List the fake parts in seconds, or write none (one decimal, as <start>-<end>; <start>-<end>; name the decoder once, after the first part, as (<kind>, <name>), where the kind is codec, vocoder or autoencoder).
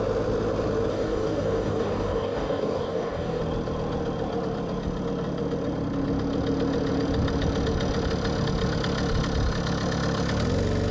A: 0.9-3.4 (codec, DAC)